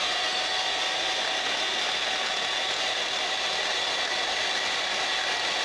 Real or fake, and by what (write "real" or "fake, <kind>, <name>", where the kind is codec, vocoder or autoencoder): real